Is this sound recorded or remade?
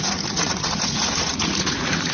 remade